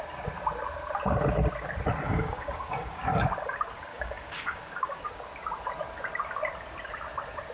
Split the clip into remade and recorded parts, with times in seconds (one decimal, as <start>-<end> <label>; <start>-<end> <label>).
0.0-2.1 recorded; 2.1-3.0 remade; 3.0-3.9 recorded; 3.9-5.0 remade; 5.0-7.5 recorded